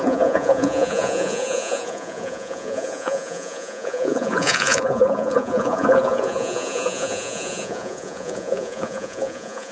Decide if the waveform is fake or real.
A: fake